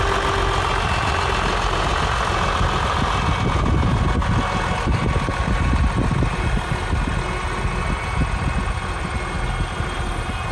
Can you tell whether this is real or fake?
real